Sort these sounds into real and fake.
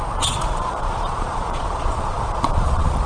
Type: fake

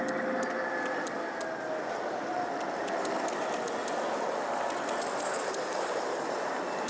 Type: real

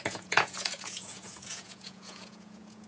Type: fake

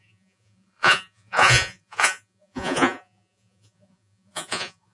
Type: fake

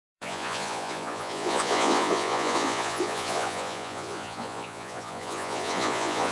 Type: fake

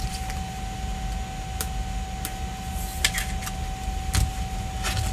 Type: real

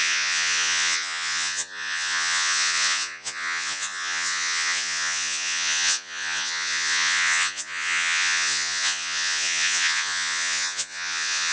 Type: fake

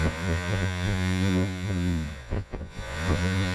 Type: fake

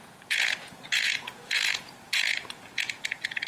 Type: fake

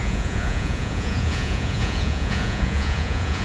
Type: fake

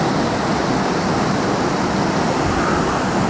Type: real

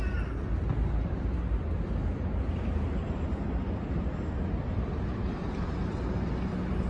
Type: real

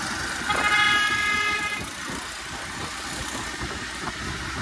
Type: real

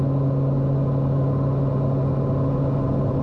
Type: real